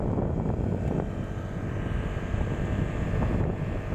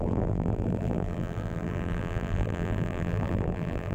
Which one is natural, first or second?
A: first